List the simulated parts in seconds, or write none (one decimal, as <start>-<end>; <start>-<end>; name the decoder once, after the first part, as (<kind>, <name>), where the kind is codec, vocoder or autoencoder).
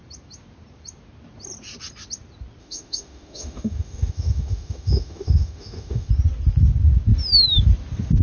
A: 2.6-6.1 (autoencoder, DAC-VAE)